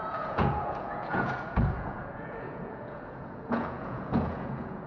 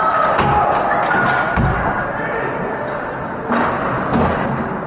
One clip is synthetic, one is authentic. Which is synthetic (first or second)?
first